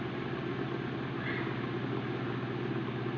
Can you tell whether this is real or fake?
real